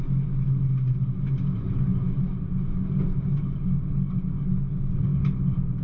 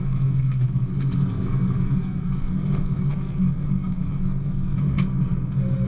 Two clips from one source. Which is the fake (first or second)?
second